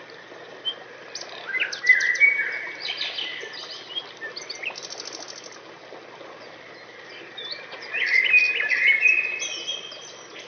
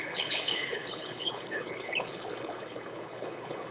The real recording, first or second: first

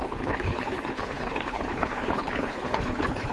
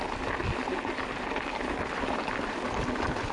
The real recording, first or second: second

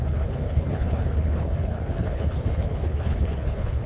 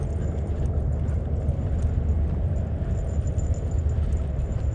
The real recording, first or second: second